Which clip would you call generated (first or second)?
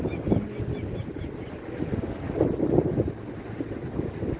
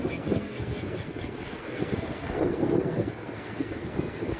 second